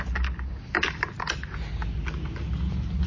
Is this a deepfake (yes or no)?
no